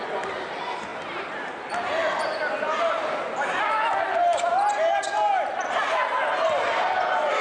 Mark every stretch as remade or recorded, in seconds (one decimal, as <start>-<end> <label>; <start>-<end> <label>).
0.0-7.4 recorded